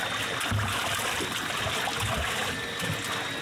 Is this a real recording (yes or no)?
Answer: yes